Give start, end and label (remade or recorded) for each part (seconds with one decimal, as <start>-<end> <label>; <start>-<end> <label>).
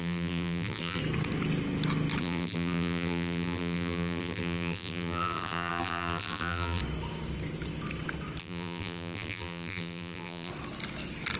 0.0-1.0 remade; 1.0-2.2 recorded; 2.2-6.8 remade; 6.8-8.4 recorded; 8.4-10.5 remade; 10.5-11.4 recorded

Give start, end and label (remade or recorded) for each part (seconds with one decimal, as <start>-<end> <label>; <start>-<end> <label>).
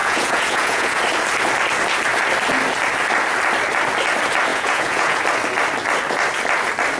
0.0-1.0 remade; 1.0-4.5 recorded; 4.5-5.2 remade; 5.2-7.0 recorded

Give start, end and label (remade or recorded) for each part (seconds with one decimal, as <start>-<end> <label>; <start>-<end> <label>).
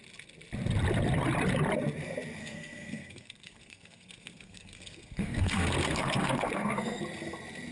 0.0-2.4 recorded; 2.4-7.0 remade; 7.0-7.7 recorded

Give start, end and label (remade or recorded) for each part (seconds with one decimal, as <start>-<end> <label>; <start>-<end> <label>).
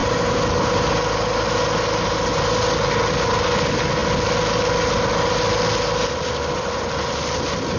0.0-7.8 recorded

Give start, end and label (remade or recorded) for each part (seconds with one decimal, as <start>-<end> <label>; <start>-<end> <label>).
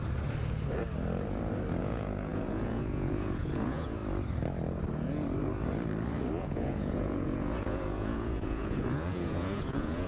0.0-1.8 recorded; 1.8-4.0 remade; 4.0-6.4 recorded; 6.4-10.1 remade